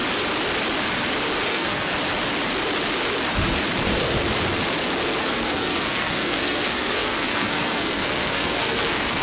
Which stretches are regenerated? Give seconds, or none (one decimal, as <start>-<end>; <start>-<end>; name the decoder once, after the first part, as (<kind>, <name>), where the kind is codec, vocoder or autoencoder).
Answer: 1.5-1.9 (codec, SNAC); 5.2-9.2